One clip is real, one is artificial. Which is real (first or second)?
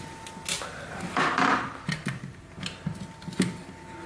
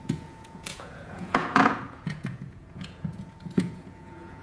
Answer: first